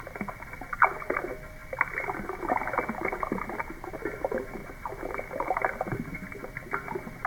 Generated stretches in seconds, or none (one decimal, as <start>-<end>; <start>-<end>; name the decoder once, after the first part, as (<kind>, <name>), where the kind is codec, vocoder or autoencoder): none